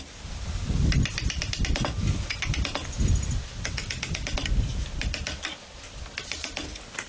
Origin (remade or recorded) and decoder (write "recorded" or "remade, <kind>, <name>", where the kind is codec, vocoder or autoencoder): recorded